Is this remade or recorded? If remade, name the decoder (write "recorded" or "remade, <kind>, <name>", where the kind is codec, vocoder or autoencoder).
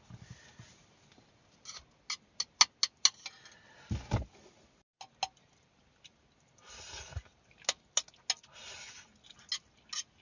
recorded